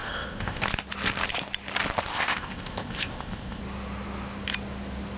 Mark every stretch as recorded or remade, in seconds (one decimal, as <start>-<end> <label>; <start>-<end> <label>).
0.0-0.6 remade; 0.6-2.1 recorded; 2.1-3.6 remade; 3.6-5.2 recorded